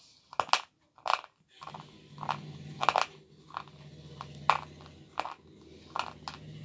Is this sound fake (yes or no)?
no